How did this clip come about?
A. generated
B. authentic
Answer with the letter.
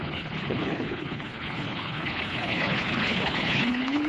A